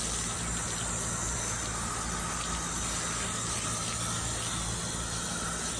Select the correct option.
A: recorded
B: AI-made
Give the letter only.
A